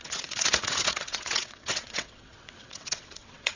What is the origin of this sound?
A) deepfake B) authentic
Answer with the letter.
A